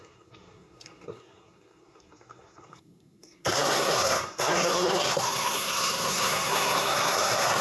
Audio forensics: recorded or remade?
remade